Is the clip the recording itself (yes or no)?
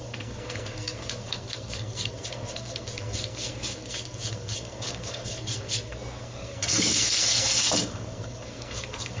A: no